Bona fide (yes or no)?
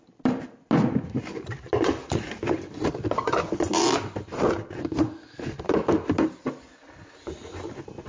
yes